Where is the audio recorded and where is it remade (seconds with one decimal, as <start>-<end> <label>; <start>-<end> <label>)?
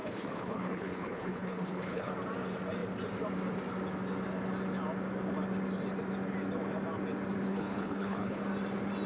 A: 0.0-2.1 remade; 2.1-7.5 recorded; 7.5-8.4 remade; 8.4-9.1 recorded